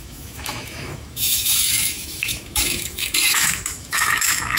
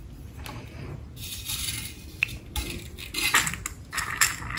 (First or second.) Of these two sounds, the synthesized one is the first